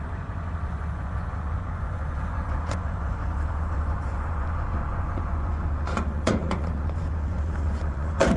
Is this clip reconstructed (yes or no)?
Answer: yes